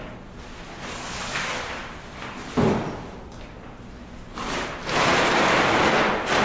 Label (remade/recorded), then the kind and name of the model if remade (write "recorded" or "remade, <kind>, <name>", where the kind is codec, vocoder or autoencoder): recorded